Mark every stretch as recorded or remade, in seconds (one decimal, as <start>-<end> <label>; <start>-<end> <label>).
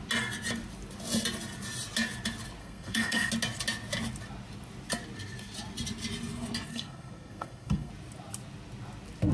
0.0-2.6 recorded; 2.6-3.3 remade; 3.3-6.7 recorded; 6.7-7.9 remade; 7.9-9.3 recorded